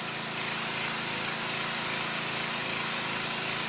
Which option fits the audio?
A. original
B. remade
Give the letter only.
A